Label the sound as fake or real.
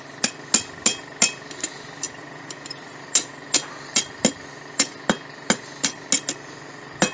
real